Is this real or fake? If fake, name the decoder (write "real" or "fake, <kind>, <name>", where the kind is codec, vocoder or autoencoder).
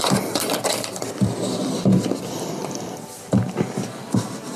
fake, vocoder, BigVGAN v2